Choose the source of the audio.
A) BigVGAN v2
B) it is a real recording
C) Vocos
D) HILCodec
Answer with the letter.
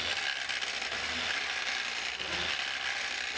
B